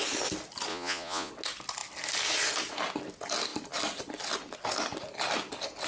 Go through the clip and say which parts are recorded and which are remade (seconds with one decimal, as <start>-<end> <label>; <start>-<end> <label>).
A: 0.0-0.7 recorded; 0.7-1.3 remade; 1.3-5.9 recorded